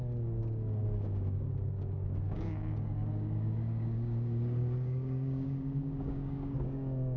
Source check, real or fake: fake